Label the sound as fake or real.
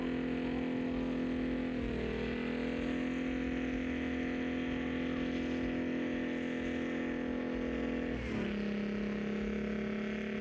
real